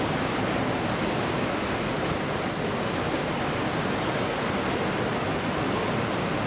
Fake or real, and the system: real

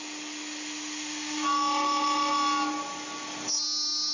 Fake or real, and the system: real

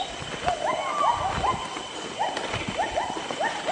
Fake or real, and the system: real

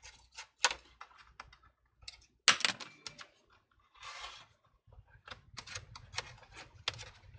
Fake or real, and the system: real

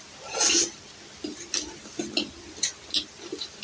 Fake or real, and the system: real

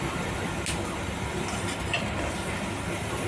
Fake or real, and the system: real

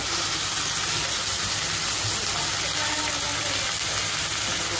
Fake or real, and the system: real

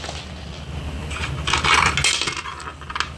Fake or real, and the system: real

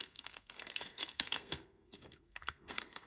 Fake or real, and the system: fake, codec, SNAC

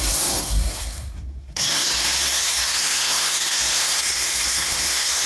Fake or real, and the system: fake, codec, SNAC